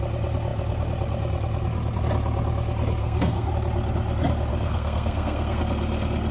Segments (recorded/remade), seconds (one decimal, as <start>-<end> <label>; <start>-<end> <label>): 0.0-3.0 recorded; 3.0-3.5 remade; 3.5-4.5 recorded; 4.5-5.6 remade; 5.6-6.3 recorded